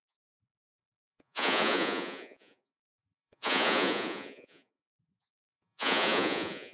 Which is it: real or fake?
fake